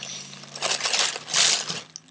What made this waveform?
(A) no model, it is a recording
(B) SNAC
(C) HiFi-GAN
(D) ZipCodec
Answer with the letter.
A